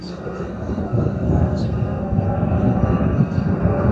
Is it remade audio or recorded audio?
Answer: remade